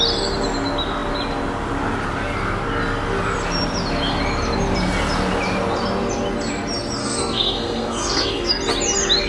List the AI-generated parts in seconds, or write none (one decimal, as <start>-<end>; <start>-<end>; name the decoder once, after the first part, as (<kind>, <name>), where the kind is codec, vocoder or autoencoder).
7.0-8.5 (codec, SNAC)